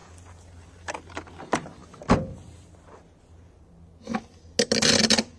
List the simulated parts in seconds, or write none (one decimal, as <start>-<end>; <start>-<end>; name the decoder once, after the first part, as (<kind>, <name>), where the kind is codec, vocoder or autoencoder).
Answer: none